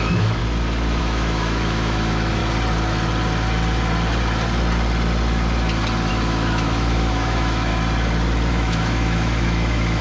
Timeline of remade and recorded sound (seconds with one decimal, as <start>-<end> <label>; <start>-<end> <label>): 0.0-0.4 remade; 0.4-1.0 recorded; 1.0-2.4 remade; 2.4-6.1 recorded; 6.1-7.7 remade; 7.7-8.5 recorded; 8.5-10.0 remade